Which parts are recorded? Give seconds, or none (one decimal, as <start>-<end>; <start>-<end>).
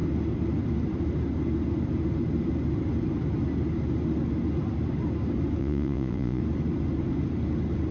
0.0-5.6; 6.4-7.9